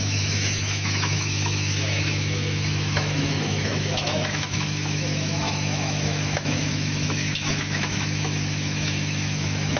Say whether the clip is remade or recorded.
remade